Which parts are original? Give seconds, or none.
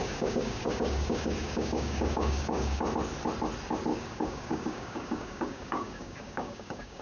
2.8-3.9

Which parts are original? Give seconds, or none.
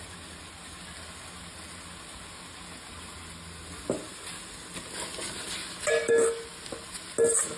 0.0-7.6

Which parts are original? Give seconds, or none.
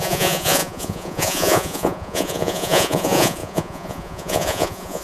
none